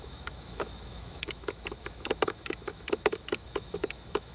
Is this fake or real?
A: fake